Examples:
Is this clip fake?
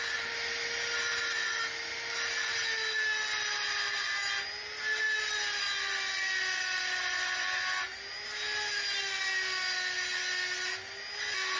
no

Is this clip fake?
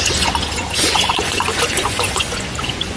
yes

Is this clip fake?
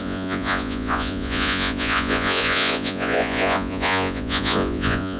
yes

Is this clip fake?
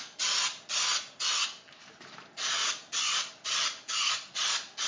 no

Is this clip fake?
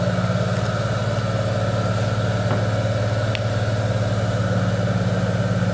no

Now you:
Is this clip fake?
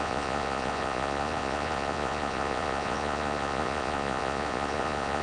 yes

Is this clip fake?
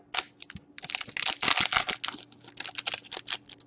no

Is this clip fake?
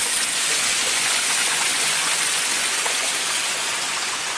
yes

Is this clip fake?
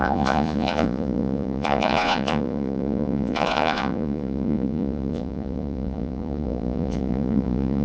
yes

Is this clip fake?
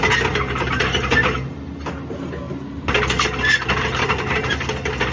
no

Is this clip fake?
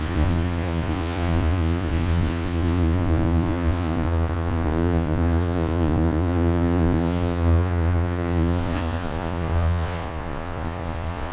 yes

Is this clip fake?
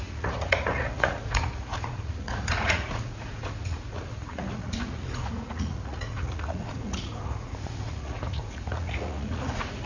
yes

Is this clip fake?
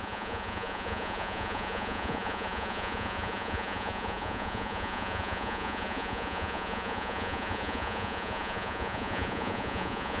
yes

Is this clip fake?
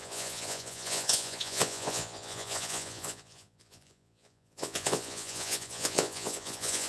yes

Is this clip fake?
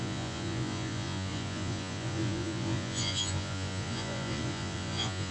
yes